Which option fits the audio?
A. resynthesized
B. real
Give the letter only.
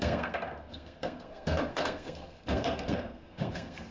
A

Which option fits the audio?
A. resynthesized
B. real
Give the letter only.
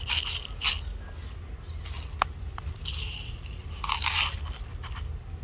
B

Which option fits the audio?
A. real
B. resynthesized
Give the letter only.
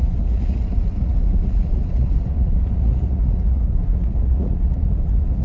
B